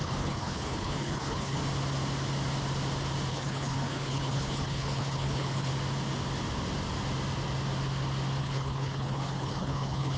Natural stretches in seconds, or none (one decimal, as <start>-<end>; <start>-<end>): 1.6-3.3; 5.7-8.4